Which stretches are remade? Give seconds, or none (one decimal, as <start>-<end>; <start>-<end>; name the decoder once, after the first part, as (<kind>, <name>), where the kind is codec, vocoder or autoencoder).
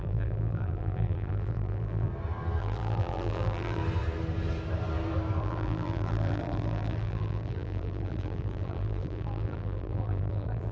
0.0-2.1 (vocoder, BigVGAN v2); 2.6-3.8; 5.4-10.7